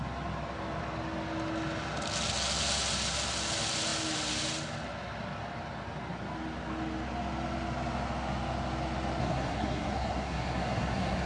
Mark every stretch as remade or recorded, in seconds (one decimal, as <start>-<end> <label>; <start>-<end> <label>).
0.0-9.2 recorded; 9.2-11.3 remade